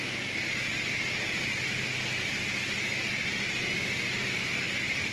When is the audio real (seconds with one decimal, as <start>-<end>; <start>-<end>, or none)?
0.7-2.2; 3.0-4.2